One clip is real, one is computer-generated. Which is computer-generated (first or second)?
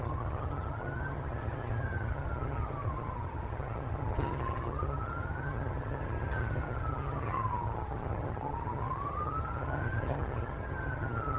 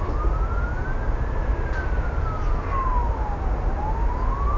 first